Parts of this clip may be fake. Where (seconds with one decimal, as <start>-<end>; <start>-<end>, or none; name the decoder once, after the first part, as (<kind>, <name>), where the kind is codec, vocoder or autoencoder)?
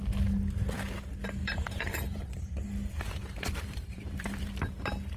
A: 1.4-4.5 (vocoder, BigVGAN v2)